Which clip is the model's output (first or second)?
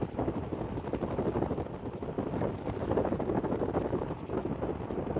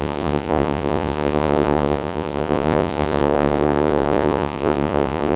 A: second